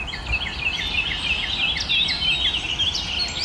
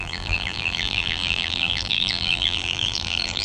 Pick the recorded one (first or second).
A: first